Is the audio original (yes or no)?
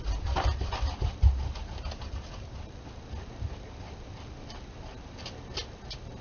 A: yes